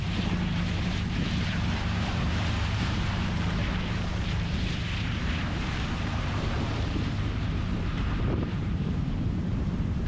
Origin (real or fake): fake